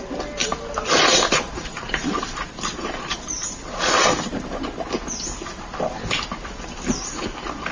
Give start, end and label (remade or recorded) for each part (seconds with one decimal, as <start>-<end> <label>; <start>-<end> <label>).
0.0-0.4 recorded; 0.4-3.5 remade; 3.5-7.7 recorded